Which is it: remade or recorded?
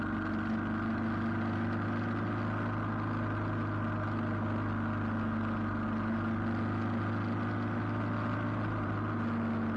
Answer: recorded